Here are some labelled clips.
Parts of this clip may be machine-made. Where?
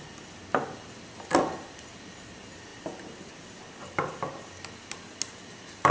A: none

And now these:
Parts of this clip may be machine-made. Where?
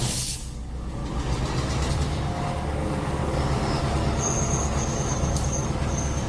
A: 0.0-1.0 (codec, DAC); 1.9-6.3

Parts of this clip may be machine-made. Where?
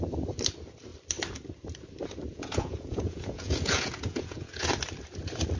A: 2.3-4.7 (vocoder, Vocos)